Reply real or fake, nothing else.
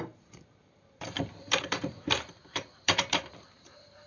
fake